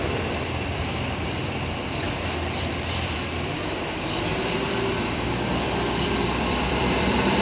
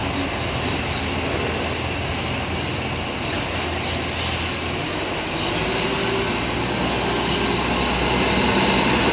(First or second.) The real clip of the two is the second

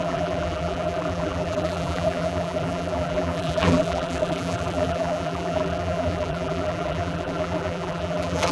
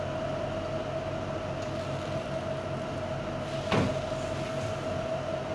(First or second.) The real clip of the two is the second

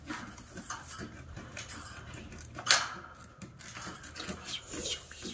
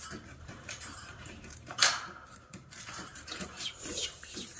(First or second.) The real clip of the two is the first